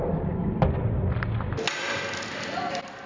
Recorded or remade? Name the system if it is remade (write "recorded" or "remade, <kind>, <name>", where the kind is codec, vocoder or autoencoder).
recorded